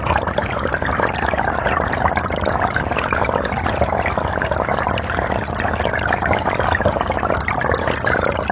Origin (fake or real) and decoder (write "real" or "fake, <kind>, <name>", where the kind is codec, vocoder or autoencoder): real